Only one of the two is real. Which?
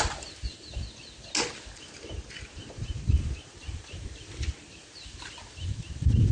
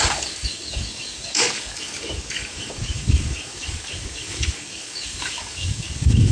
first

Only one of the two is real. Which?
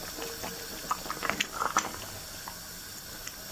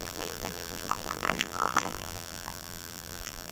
first